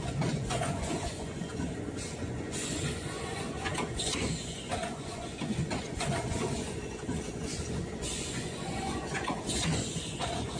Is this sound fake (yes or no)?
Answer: yes